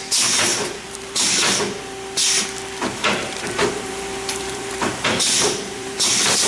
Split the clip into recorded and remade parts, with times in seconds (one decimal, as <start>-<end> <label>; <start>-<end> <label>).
0.0-0.5 recorded; 0.5-1.6 remade; 1.6-2.8 recorded; 2.8-6.1 remade; 6.1-6.5 recorded